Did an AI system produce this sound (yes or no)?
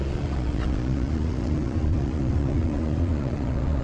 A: yes